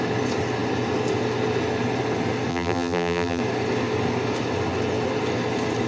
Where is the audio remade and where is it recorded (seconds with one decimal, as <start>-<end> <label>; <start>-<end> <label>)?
0.0-2.5 recorded; 2.5-3.4 remade; 3.4-5.9 recorded